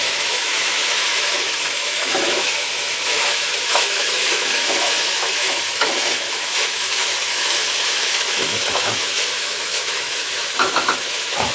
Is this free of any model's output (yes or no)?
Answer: no